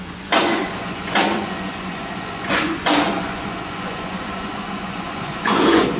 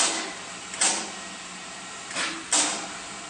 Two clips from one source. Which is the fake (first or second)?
first